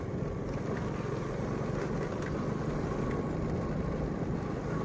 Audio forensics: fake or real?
real